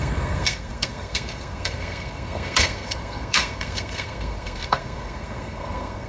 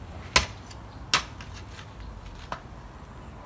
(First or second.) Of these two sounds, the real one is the second